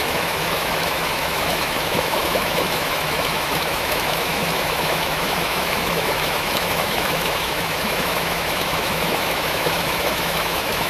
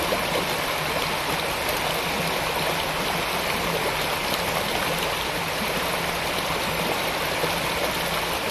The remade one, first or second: first